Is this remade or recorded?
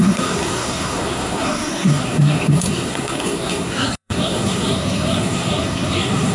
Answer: remade